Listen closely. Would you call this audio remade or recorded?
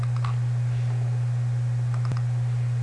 recorded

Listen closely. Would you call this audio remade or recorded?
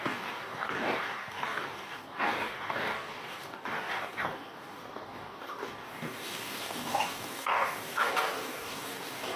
remade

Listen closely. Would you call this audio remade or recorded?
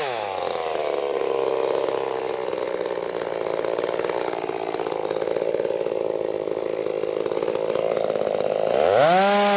recorded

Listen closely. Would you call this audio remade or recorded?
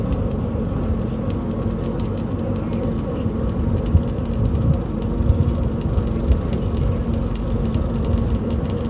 recorded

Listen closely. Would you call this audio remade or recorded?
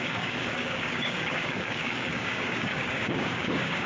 remade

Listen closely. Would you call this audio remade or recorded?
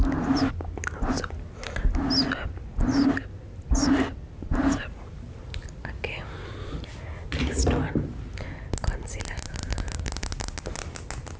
recorded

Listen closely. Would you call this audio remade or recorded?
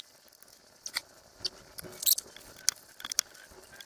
recorded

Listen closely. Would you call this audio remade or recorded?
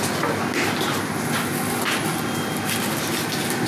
recorded